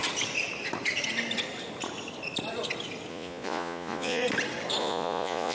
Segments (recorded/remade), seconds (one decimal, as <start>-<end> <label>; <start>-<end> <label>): 0.0-3.1 recorded; 3.1-4.2 remade; 4.2-4.8 recorded; 4.8-5.5 remade